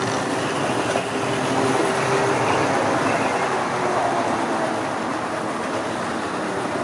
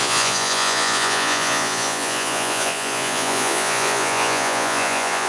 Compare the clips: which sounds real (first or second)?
first